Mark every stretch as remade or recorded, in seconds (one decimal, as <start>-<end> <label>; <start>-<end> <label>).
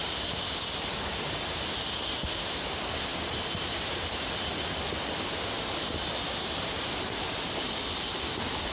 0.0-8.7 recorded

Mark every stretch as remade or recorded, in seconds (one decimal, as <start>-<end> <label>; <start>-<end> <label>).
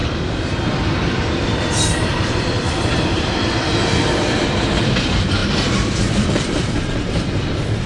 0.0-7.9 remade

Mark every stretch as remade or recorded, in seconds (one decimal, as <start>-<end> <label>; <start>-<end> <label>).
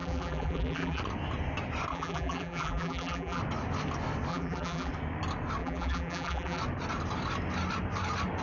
0.0-1.0 remade; 1.0-1.9 recorded; 1.9-3.4 remade; 3.4-4.3 recorded; 4.3-4.9 remade; 4.9-5.6 recorded; 5.6-6.6 remade; 6.6-8.4 recorded